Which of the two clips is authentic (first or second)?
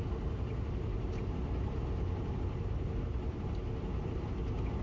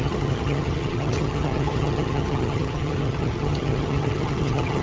first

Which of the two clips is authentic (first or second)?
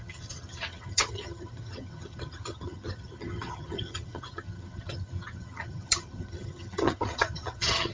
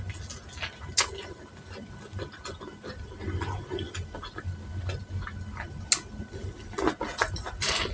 second